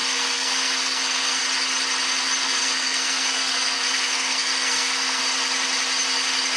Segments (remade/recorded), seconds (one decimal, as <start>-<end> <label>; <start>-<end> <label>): 0.0-1.4 remade; 1.4-2.4 recorded; 2.4-5.2 remade; 5.2-6.6 recorded